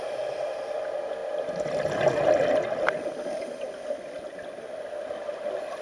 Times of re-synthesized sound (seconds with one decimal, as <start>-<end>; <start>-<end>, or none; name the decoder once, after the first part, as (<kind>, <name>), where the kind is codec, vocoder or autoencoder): none